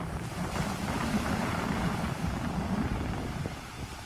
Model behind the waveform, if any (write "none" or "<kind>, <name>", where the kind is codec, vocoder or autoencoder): vocoder, BigVGAN v2